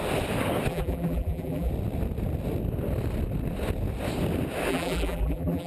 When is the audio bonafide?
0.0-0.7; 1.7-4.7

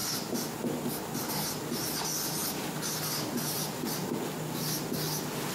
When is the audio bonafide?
0.0-5.5

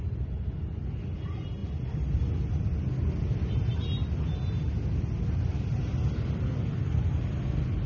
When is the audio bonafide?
0.0-7.9

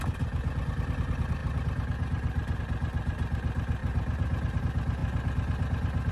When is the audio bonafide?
0.0-3.8; 4.6-6.1